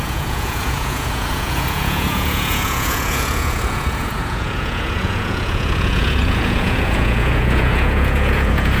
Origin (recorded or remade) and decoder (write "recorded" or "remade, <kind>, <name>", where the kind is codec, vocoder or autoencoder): remade, vocoder, Vocos